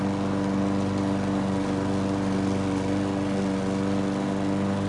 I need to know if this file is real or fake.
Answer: real